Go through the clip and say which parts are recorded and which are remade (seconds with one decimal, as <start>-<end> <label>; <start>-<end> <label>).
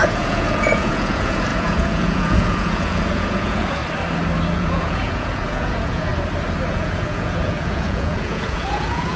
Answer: 0.0-3.8 remade; 3.8-4.5 recorded; 4.5-6.1 remade; 6.1-6.7 recorded; 6.7-9.2 remade